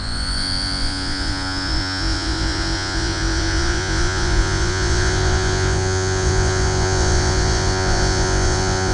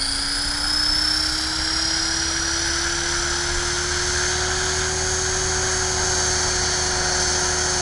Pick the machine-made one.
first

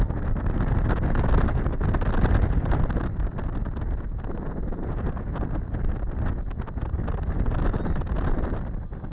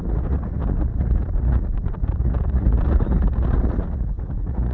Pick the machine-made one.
second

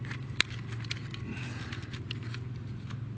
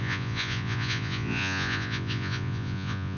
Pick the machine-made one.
second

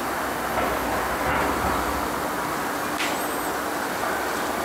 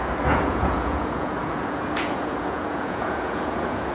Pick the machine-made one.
second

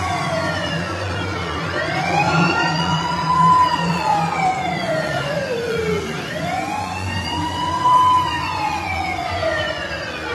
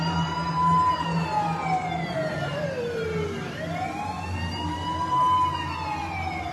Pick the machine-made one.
first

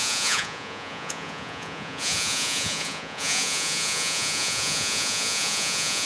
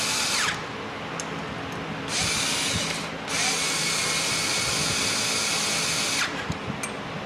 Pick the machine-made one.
first